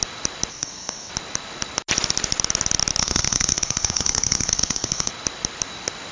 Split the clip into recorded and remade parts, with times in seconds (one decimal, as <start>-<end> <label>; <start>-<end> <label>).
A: 0.0-0.5 recorded; 0.5-1.1 remade; 1.1-3.0 recorded; 3.0-5.1 remade; 5.1-6.1 recorded